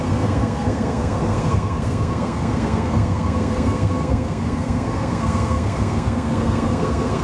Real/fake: fake